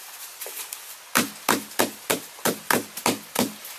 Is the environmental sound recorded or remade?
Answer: recorded